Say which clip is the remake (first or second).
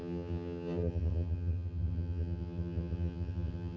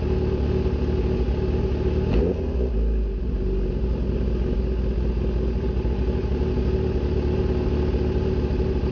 first